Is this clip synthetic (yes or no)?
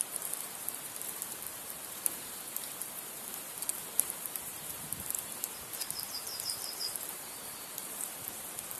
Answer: yes